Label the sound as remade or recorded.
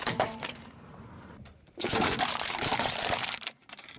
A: remade